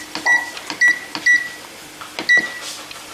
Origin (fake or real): real